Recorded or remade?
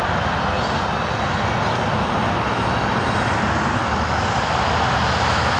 recorded